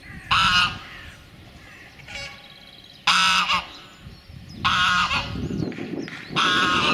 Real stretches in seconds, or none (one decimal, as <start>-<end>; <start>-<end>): 0.0-6.9